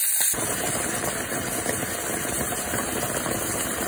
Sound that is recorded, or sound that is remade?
remade